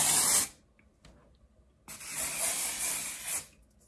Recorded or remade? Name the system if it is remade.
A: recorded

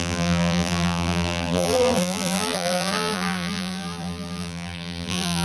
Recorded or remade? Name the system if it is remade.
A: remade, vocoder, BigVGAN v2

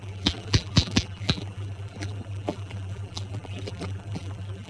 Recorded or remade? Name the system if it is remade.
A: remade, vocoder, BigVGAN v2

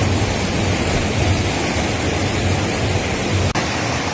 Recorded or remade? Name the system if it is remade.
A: recorded